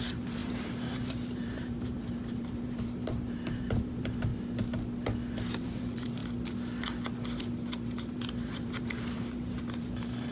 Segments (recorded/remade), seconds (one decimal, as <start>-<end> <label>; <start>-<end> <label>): 0.0-4.3 remade; 4.3-5.5 recorded; 5.5-6.2 remade; 6.2-7.4 recorded; 7.4-10.3 remade